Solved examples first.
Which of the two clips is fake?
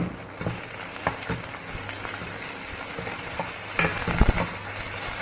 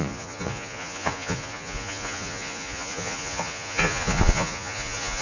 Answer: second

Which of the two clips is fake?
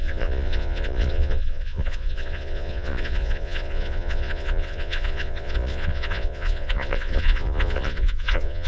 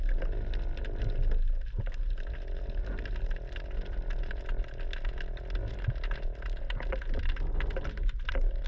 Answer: first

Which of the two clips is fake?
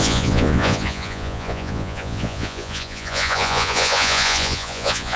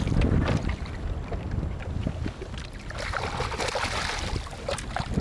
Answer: first